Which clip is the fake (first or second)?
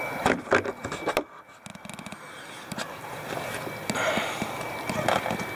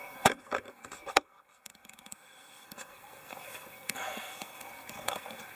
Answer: second